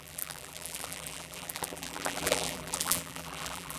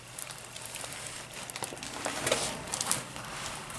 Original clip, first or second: second